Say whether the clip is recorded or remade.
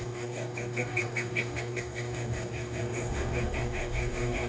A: remade